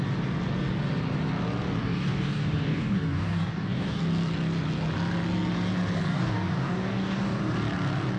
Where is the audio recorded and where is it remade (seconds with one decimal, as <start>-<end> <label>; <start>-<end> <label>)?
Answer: 0.0-1.8 recorded; 1.8-4.0 remade; 4.0-6.1 recorded; 6.1-7.4 remade; 7.4-8.2 recorded